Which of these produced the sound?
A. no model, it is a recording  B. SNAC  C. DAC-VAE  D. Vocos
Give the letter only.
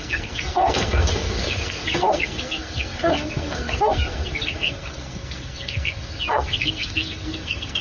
B